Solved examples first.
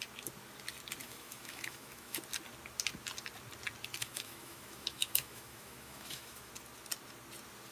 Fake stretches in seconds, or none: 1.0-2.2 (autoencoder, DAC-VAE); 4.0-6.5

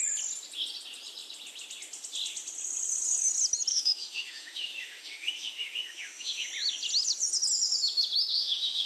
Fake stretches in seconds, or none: 3.7-6.5 (autoencoder, DAC-VAE); 8.3-8.9

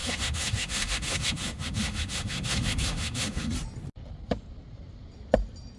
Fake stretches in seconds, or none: 0.0-3.5 (autoencoder, DAC-VAE)

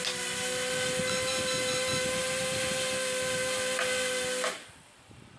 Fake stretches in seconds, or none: none